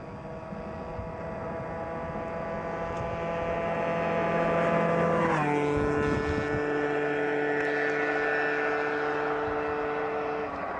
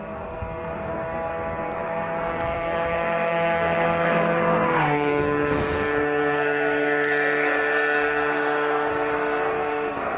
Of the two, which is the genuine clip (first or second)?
first